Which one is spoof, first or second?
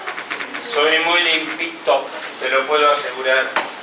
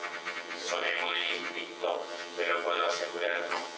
second